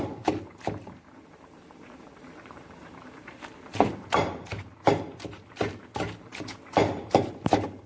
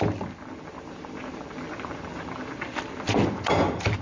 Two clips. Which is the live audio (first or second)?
second